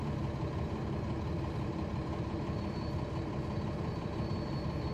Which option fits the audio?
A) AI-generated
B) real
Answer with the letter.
A